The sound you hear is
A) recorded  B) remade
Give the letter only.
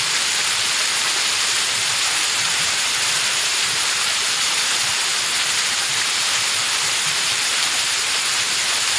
B